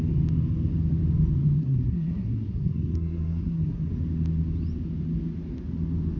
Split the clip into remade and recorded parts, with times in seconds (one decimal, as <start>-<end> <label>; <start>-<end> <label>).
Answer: 0.0-1.6 recorded; 1.6-3.9 remade; 3.9-6.2 recorded